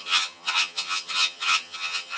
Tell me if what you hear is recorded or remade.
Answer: remade